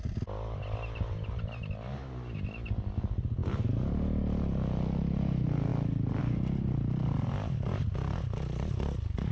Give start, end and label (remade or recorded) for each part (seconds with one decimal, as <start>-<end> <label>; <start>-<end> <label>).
0.0-9.3 recorded